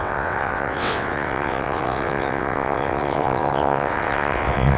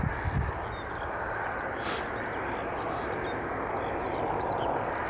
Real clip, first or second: second